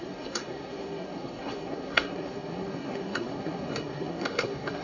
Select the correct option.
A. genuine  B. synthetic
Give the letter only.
B